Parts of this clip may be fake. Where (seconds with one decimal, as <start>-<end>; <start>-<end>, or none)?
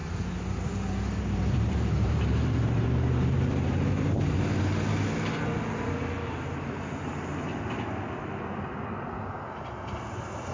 0.0-4.2